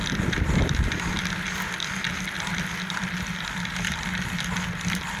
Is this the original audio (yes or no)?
yes